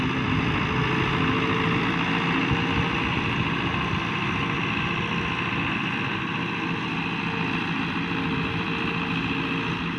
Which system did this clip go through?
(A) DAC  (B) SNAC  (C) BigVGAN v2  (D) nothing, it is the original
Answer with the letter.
D